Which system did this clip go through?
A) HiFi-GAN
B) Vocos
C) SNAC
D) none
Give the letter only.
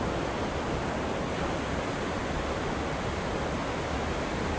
D